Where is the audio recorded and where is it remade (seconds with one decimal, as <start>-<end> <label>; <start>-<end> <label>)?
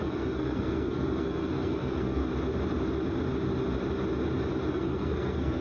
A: 0.0-2.2 remade; 2.2-4.7 recorded; 4.7-5.6 remade